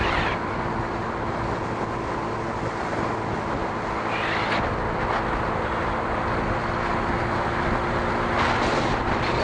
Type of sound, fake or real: real